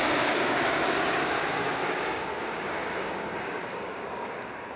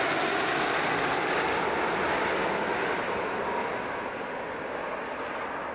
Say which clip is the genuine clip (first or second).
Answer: second